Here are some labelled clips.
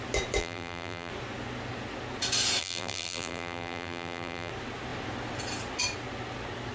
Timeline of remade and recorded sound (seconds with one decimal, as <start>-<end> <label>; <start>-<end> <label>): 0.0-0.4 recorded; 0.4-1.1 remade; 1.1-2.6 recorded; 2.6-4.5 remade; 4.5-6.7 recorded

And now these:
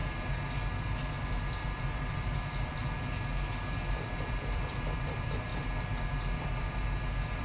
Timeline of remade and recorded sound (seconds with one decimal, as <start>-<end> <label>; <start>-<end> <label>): 0.0-1.3 recorded; 1.3-2.8 remade; 2.8-3.8 recorded; 3.8-5.5 remade; 5.5-6.0 recorded; 6.0-7.4 remade

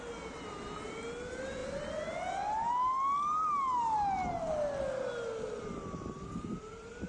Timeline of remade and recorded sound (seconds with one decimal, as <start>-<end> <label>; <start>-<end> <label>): 0.0-7.1 recorded